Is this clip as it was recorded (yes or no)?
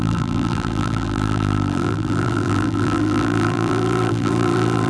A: no